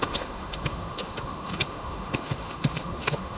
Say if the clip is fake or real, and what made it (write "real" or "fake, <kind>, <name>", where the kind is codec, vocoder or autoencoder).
fake, autoencoder, DAC-VAE